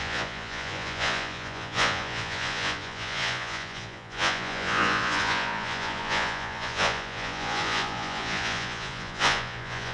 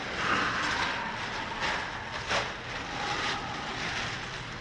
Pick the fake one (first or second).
first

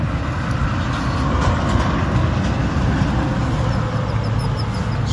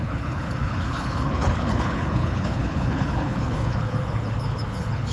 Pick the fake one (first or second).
second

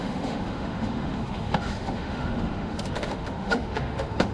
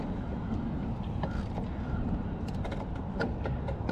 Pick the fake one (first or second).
first